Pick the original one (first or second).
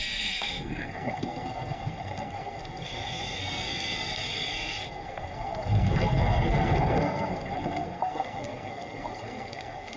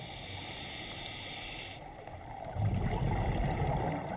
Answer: second